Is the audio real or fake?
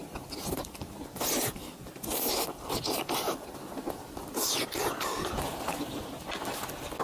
real